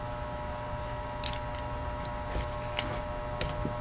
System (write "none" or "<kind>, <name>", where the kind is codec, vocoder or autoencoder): none